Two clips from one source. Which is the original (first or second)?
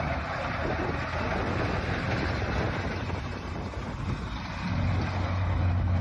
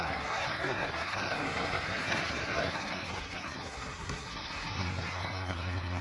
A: first